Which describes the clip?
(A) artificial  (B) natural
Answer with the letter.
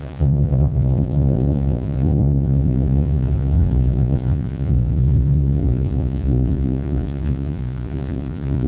A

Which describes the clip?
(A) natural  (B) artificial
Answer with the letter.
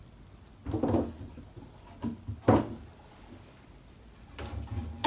A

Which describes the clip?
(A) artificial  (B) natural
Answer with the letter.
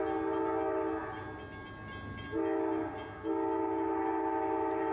B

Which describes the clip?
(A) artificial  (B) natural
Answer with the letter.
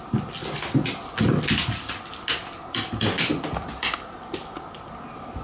B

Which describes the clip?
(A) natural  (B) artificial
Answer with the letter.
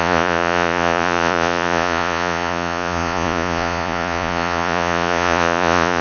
B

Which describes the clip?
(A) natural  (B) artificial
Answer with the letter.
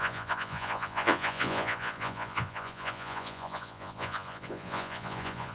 B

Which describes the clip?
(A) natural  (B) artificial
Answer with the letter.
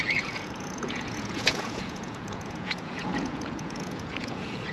B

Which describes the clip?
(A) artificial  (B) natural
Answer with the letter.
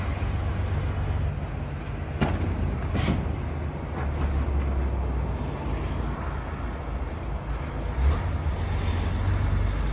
B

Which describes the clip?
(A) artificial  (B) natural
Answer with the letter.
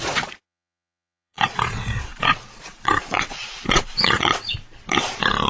A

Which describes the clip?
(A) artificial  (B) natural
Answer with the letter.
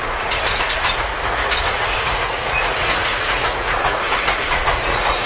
A